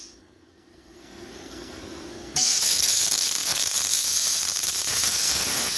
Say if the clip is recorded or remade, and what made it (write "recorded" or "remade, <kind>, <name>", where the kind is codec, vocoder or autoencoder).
remade, codec, SNAC